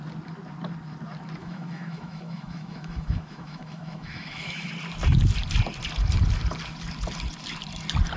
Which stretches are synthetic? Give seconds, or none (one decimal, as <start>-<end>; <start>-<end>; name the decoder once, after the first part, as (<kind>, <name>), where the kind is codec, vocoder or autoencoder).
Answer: 1.4-4.7 (autoencoder, DAC-VAE)